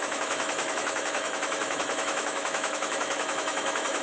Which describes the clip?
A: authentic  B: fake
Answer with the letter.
B